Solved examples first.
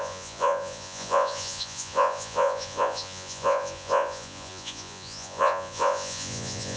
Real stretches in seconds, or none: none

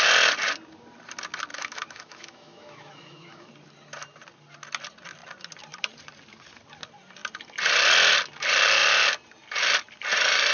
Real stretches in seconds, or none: 0.0-1.5; 3.5-10.5

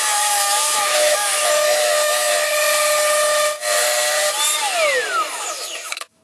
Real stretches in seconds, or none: 2.3-5.5